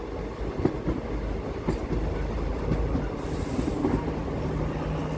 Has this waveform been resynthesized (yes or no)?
no